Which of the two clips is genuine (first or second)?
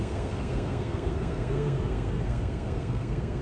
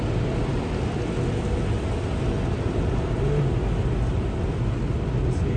second